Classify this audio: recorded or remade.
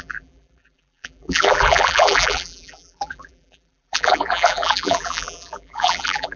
remade